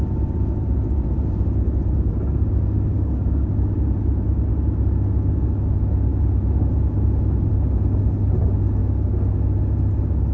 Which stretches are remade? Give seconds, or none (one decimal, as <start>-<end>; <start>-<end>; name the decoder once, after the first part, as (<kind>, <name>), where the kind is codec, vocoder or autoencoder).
2.9-3.7 (codec, DAC)